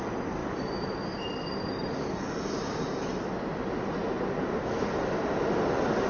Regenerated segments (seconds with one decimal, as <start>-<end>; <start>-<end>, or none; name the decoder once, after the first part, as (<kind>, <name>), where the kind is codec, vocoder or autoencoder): none